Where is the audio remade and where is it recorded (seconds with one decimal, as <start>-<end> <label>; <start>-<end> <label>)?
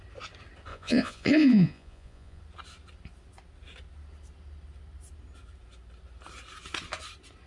0.0-0.7 recorded; 0.7-2.4 remade; 2.4-7.5 recorded